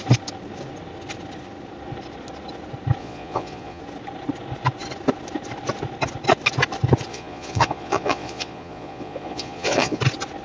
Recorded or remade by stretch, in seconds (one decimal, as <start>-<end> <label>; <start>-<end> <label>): 0.0-3.0 recorded; 3.0-3.8 remade; 3.8-7.1 recorded; 7.1-10.0 remade; 10.0-10.4 recorded